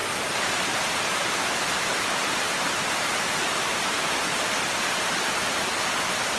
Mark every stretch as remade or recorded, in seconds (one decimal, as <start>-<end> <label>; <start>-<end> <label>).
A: 0.0-1.7 recorded; 1.7-6.4 remade